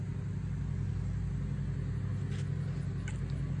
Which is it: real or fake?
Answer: real